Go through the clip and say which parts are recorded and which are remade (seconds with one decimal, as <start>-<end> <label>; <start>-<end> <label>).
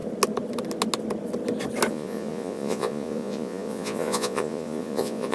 0.0-1.9 recorded; 1.9-5.3 remade